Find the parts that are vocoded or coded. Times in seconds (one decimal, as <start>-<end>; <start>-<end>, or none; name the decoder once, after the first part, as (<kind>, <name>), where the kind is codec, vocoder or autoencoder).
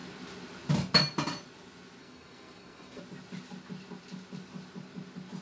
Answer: 2.0-3.0 (codec, SNAC)